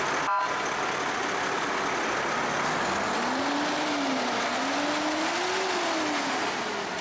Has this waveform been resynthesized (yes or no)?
no